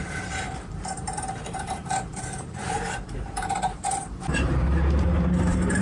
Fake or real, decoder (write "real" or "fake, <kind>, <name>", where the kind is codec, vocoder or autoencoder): fake, vocoder, BigVGAN v2